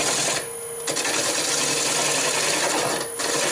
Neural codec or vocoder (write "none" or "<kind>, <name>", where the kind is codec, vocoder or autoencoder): none